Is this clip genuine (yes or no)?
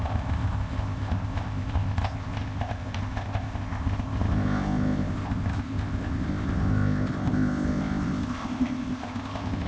no